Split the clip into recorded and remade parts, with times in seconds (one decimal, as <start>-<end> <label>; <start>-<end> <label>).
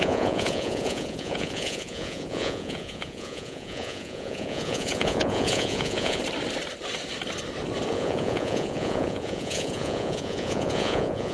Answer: 0.0-6.2 remade; 6.2-7.9 recorded; 7.9-11.3 remade